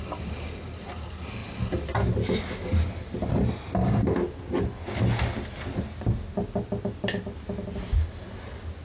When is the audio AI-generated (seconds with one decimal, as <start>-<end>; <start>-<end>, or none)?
none